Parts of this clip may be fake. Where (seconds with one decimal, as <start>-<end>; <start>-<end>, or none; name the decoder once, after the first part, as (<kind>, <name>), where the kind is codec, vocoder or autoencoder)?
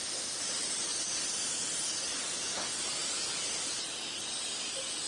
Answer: none